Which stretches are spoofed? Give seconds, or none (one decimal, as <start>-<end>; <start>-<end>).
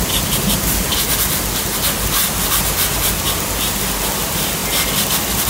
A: none